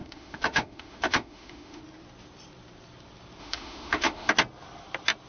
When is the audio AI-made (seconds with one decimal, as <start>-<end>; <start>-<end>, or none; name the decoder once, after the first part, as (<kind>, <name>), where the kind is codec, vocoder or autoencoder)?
0.0-1.8 (autoencoder, DAC-VAE); 3.4-4.3